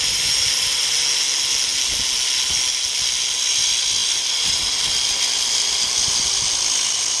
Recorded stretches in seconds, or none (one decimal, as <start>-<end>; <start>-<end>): 0.0-7.2